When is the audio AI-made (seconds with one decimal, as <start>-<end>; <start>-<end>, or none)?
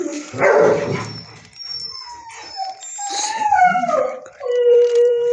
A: 0.0-0.4; 3.6-5.3